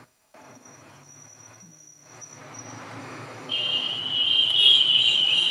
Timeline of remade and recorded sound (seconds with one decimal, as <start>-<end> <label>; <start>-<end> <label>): 0.0-2.4 remade; 2.4-3.0 recorded; 3.0-4.0 remade; 4.0-5.1 recorded; 5.1-5.5 remade